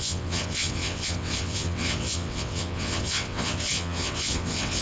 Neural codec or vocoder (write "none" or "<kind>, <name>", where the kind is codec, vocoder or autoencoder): vocoder, WaveNeXt